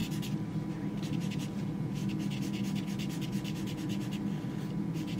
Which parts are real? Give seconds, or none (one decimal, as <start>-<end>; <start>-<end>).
0.0-1.2; 2.0-4.8